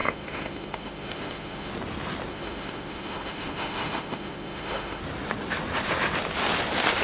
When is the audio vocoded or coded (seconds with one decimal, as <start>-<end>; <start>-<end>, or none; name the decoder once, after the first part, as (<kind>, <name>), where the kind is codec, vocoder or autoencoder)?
0.0-1.7 (autoencoder, DAC-VAE); 2.3-5.0